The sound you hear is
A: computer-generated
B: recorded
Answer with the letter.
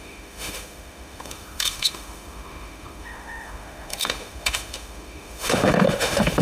A